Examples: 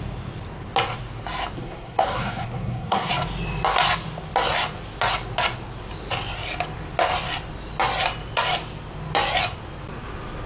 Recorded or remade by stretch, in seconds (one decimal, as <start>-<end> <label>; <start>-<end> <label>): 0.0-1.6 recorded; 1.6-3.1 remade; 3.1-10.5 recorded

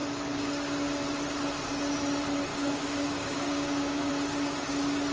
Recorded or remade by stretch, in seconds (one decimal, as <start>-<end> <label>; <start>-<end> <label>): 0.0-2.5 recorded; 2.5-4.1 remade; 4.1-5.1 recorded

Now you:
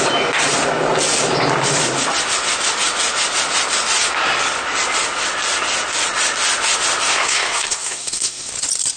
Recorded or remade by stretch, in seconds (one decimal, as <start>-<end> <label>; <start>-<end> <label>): 0.0-7.1 recorded; 7.1-8.5 remade; 8.5-9.0 recorded